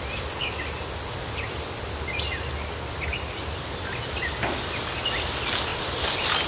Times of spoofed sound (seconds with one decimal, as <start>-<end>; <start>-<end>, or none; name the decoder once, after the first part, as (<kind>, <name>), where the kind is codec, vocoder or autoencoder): 3.1-3.7 (vocoder, BigVGAN v2); 5.7-6.5